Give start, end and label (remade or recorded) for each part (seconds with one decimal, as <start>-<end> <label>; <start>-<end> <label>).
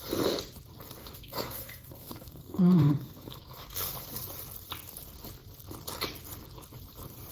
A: 0.0-1.0 recorded; 1.0-3.9 remade; 3.9-7.3 recorded